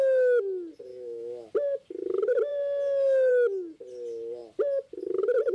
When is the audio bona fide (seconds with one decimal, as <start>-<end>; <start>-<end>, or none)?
0.0-0.9; 1.5-5.5